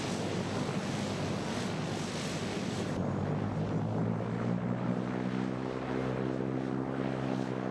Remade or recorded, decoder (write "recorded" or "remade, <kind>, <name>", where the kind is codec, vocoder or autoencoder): recorded